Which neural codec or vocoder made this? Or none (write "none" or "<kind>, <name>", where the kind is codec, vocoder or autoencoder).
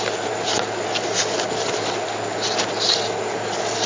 none